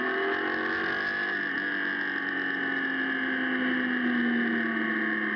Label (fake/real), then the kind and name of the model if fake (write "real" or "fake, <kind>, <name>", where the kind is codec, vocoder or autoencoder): real